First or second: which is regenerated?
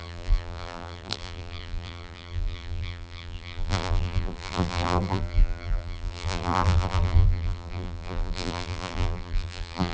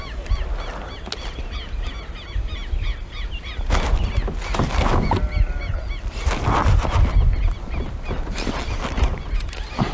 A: first